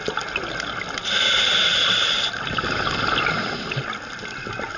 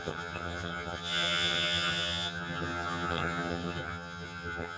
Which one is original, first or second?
first